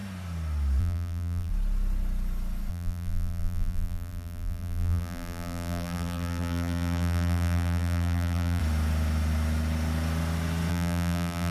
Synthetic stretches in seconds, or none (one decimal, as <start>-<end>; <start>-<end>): 0.8-1.5; 2.7-8.6; 10.7-11.5